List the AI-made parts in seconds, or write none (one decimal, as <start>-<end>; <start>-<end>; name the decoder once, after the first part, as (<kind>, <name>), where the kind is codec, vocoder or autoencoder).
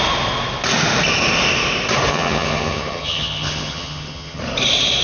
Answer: 2.1-4.4 (vocoder, HiFi-GAN)